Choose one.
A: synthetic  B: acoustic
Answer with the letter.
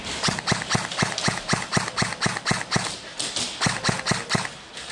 B